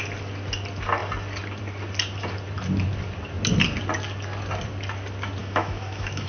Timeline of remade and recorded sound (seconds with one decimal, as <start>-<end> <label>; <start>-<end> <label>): 0.0-5.4 recorded; 5.4-6.3 remade